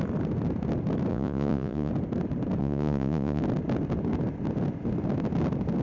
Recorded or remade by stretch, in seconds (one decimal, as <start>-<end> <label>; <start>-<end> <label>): 0.0-1.1 recorded; 1.1-1.9 remade; 1.9-2.6 recorded; 2.6-3.4 remade; 3.4-5.8 recorded